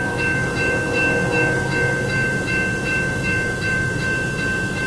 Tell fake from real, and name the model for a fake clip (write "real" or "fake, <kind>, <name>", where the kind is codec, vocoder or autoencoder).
fake, autoencoder, DAC-VAE